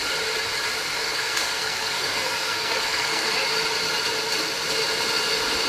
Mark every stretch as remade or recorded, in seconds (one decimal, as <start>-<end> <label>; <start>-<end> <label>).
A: 0.0-1.0 recorded; 1.0-3.3 remade; 3.3-5.7 recorded